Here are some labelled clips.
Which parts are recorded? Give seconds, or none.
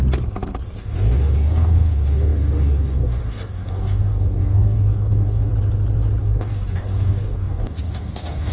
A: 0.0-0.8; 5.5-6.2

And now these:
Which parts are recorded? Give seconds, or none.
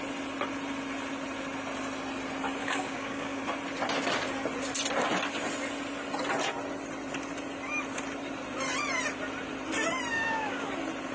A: 0.0-2.6; 3.4-10.1; 10.7-11.1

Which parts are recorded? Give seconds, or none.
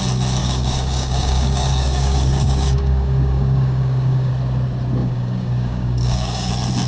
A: 0.0-0.4; 4.3-5.0; 6.5-6.9